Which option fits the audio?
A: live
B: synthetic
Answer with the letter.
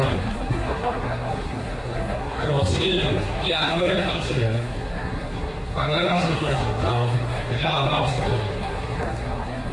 B